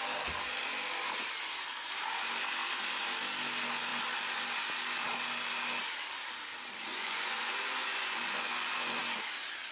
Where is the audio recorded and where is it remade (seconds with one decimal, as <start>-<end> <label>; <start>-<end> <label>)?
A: 0.0-6.9 recorded; 6.9-9.0 remade; 9.0-9.7 recorded